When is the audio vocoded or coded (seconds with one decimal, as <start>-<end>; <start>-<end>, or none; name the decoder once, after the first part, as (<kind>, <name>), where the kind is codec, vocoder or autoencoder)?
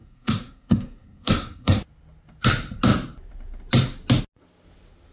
0.0-1.8 (codec, SNAC)